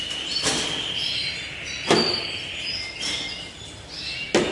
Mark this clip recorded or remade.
recorded